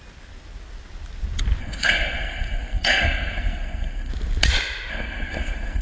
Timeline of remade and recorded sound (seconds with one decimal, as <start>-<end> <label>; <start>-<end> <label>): 0.0-1.6 recorded; 1.6-4.1 remade; 4.1-4.9 recorded; 4.9-5.8 remade